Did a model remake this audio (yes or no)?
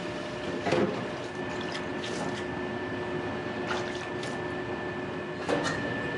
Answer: no